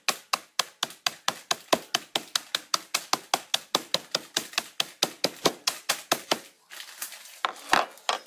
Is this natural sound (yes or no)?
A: yes